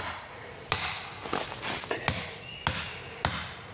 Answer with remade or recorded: recorded